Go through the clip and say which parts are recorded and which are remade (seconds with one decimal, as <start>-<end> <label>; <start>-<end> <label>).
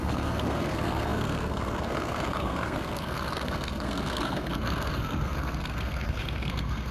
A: 0.0-6.9 remade